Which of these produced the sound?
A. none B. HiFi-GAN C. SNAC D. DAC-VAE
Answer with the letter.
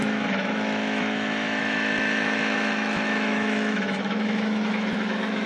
D